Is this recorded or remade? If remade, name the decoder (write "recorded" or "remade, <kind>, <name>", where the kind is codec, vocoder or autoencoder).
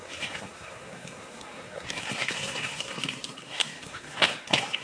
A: remade, codec, SNAC